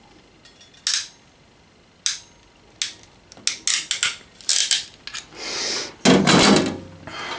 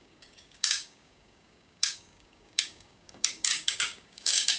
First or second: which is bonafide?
first